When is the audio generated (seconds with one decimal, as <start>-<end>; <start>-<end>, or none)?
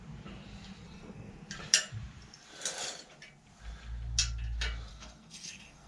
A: 0.8-1.3; 4.9-5.9